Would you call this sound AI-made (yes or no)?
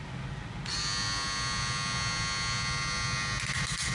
no